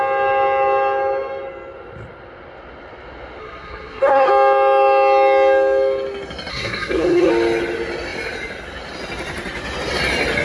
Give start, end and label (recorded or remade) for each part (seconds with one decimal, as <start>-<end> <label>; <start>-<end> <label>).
0.0-3.4 recorded; 3.4-4.3 remade; 4.3-6.5 recorded; 6.5-7.3 remade; 7.3-10.4 recorded